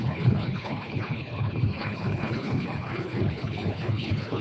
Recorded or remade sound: remade